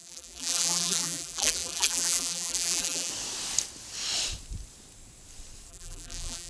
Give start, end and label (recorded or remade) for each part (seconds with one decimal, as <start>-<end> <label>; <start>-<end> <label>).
0.0-3.1 remade; 3.1-5.7 recorded; 5.7-6.5 remade